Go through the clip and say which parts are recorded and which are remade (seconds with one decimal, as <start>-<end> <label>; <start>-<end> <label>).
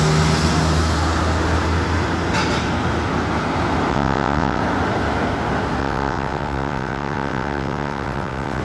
0.0-3.9 recorded; 3.9-4.6 remade; 4.6-5.8 recorded; 5.8-8.6 remade